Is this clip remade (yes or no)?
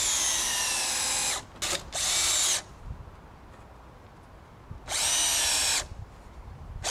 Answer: no